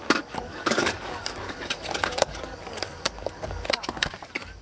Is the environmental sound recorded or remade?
remade